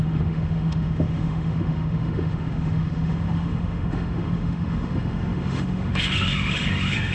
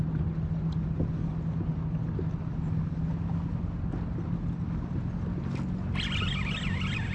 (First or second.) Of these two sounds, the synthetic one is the first